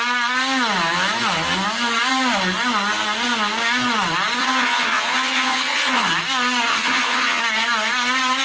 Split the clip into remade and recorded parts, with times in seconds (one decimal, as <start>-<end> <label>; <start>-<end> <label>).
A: 0.0-4.4 recorded; 4.4-6.1 remade; 6.1-6.7 recorded; 6.7-7.4 remade; 7.4-8.4 recorded